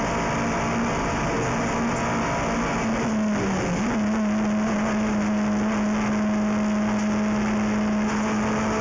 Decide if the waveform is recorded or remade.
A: recorded